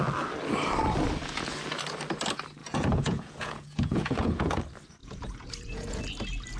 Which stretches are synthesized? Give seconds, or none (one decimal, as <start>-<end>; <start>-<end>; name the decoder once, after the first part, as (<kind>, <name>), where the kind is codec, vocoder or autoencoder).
2.6-4.6 (vocoder, Vocos); 5.0-6.0